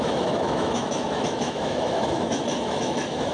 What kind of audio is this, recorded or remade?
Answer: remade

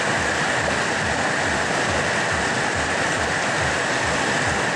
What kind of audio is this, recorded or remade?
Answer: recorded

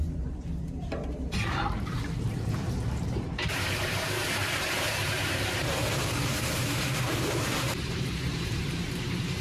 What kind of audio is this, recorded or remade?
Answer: remade